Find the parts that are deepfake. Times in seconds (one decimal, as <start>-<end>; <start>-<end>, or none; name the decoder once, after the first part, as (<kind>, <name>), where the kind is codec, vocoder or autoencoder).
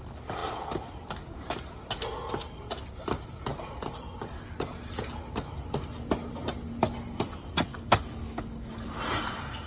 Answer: 7.7-9.0 (codec, DAC)